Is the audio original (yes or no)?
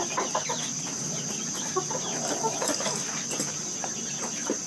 yes